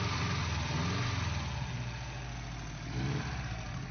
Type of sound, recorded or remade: recorded